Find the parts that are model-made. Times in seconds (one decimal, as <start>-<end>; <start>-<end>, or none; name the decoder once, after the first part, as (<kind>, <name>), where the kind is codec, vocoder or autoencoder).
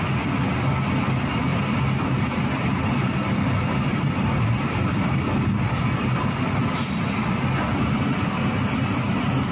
1.5-6.3 (vocoder, BigVGAN v2)